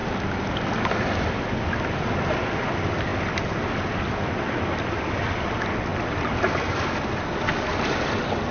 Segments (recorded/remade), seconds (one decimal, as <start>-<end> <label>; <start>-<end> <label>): 0.0-8.5 recorded